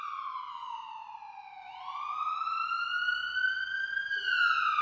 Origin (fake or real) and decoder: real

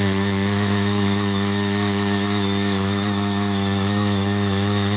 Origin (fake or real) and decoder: fake, autoencoder, DAC-VAE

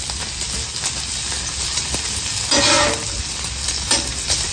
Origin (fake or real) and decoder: real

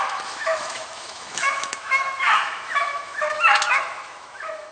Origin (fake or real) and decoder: fake, autoencoder, DAC-VAE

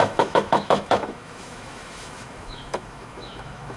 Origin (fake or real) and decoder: fake, autoencoder, DAC-VAE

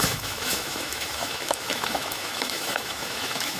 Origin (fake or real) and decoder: fake, autoencoder, DAC-VAE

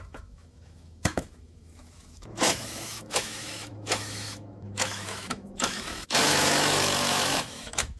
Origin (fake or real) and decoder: fake, autoencoder, DAC-VAE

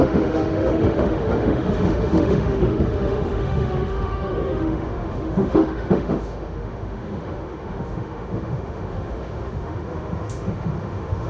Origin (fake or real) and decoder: fake, autoencoder, DAC-VAE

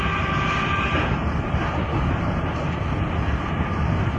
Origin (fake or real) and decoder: real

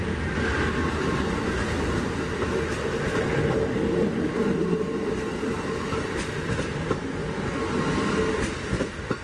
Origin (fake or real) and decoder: real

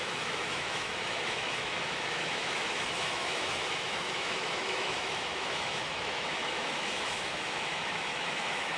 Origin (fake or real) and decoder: fake, autoencoder, DAC-VAE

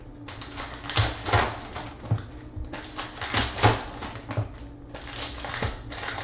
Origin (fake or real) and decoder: real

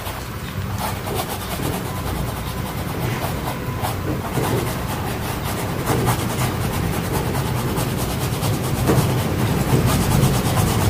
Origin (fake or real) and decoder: real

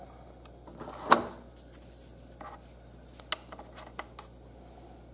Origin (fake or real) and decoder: real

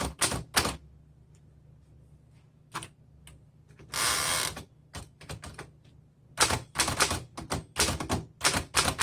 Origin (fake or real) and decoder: real